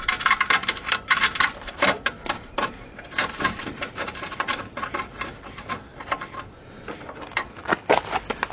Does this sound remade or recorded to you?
remade